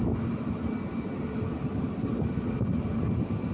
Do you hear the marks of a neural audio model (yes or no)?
no